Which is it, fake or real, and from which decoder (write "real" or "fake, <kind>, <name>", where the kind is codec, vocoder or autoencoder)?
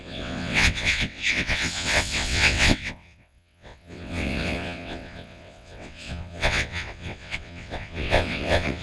fake, vocoder, WaveNeXt